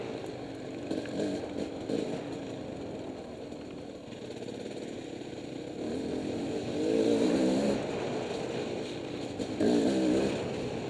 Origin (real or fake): real